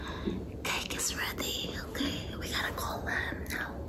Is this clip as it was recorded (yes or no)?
yes